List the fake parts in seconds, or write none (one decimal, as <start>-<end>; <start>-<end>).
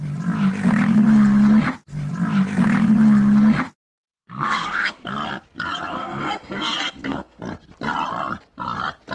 4.0-5.1; 5.9-7.4